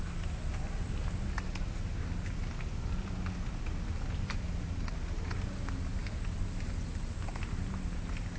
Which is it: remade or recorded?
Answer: recorded